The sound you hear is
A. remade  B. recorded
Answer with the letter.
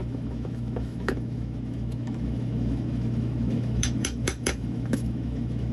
A